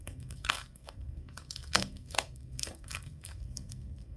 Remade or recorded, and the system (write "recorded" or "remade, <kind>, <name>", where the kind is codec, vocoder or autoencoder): remade, codec, SNAC